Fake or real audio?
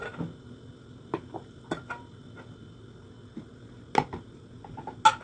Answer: real